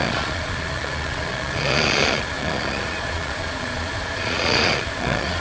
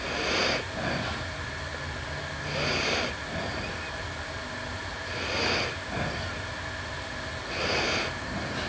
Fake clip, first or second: first